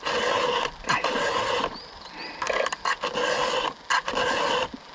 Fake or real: real